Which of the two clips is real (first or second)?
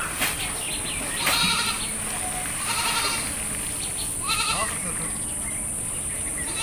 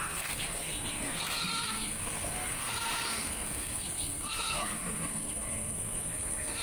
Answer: first